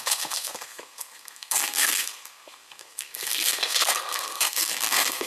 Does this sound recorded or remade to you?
remade